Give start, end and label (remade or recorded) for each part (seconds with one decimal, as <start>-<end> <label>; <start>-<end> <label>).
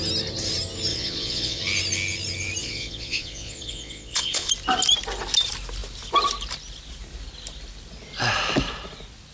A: 0.0-0.9 recorded; 0.9-1.6 remade; 1.6-2.6 recorded; 2.6-4.5 remade; 4.5-9.3 recorded